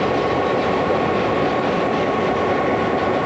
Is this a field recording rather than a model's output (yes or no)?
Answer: yes